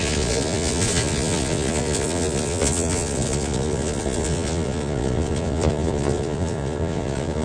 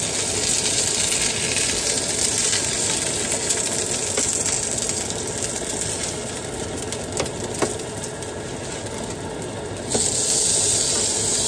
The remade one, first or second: first